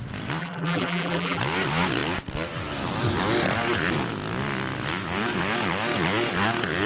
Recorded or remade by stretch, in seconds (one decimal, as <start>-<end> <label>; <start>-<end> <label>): 0.0-0.4 recorded; 0.4-1.4 remade; 1.4-6.9 recorded